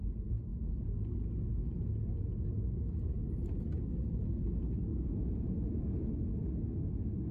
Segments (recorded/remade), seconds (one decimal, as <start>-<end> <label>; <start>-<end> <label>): 0.0-4.9 recorded; 4.9-6.1 remade; 6.1-7.3 recorded